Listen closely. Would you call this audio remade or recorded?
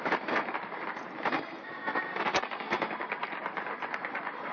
recorded